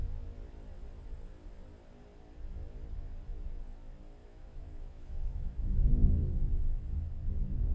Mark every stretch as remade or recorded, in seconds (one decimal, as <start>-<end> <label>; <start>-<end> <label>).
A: 0.0-4.2 recorded; 4.2-6.1 remade; 6.1-7.7 recorded

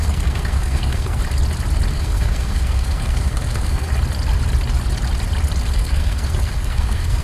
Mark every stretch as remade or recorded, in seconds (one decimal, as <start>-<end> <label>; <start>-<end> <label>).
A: 0.0-1.2 remade; 1.2-1.9 recorded; 1.9-3.9 remade; 3.9-5.7 recorded; 5.7-7.2 remade

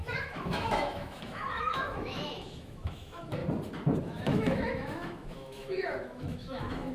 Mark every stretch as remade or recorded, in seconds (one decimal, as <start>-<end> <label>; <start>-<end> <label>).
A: 0.0-3.4 remade; 3.4-4.0 recorded; 4.0-6.9 remade

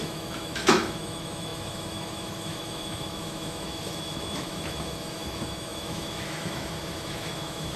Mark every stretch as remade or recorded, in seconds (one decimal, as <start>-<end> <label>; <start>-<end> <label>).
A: 0.0-7.8 remade

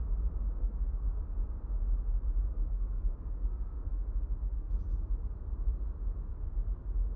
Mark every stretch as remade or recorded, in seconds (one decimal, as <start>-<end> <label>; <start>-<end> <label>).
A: 0.0-0.6 recorded; 0.6-1.2 remade; 1.2-2.5 recorded; 2.5-4.7 remade; 4.7-7.2 recorded